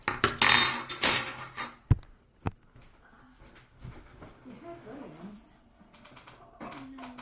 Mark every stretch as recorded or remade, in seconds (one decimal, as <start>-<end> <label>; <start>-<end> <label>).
0.0-7.2 recorded